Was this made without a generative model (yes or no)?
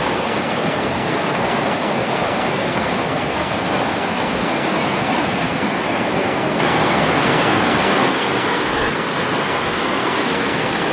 no